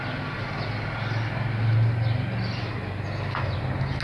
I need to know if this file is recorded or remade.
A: recorded